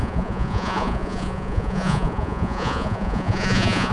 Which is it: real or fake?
fake